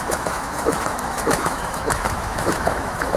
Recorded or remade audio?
remade